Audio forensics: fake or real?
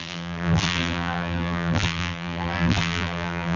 fake